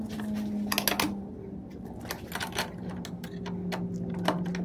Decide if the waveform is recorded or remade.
recorded